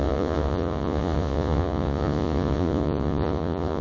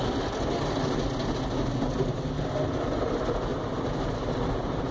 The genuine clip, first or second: second